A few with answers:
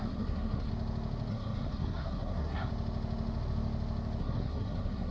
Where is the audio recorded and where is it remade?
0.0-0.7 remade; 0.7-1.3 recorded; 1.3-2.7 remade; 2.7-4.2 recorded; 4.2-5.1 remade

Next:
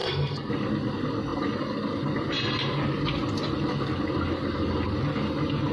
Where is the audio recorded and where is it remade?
0.0-0.5 remade; 0.5-5.7 recorded

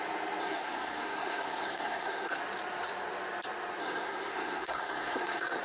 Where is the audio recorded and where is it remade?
0.0-0.4 recorded; 0.4-2.4 remade; 2.4-3.8 recorded; 3.8-5.6 remade

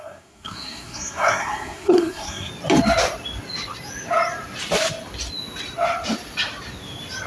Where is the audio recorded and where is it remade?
0.0-2.5 remade; 2.5-7.3 recorded

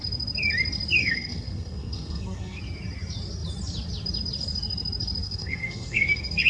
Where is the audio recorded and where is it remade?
0.0-1.0 recorded; 1.0-2.6 remade; 2.6-5.2 recorded; 5.2-6.5 remade

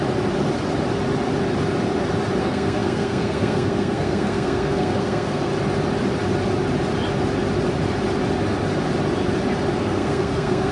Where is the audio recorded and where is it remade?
0.0-2.4 recorded; 2.4-5.5 remade; 5.5-9.8 recorded; 9.8-10.7 remade

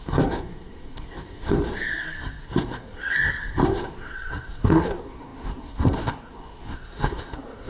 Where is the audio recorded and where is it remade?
0.0-7.7 remade

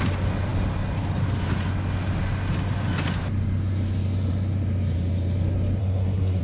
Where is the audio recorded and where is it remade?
0.0-5.8 recorded; 5.8-6.4 remade